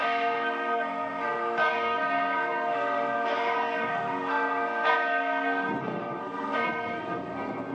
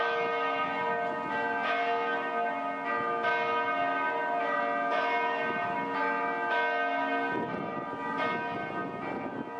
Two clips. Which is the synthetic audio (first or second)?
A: first